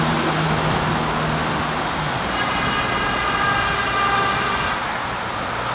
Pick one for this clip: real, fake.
real